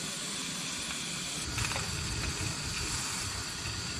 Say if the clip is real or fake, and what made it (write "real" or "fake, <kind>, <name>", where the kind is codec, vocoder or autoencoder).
real